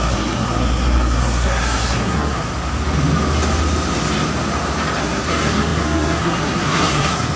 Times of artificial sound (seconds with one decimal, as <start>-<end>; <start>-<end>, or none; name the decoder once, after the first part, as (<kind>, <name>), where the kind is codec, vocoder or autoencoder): 0.0-2.5 (codec, SNAC); 5.0-7.4